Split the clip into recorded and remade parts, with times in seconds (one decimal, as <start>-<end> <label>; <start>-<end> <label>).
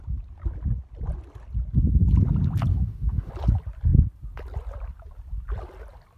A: 0.0-2.7 recorded; 2.7-3.3 remade; 3.3-6.2 recorded